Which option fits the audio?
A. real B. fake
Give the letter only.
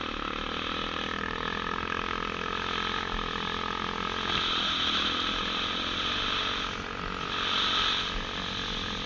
A